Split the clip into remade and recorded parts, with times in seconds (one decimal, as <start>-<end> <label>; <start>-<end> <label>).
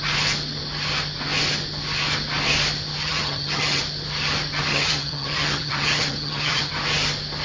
0.0-3.0 recorded; 3.0-3.8 remade; 3.8-4.7 recorded; 4.7-6.7 remade; 6.7-7.4 recorded